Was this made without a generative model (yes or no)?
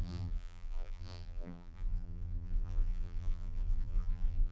no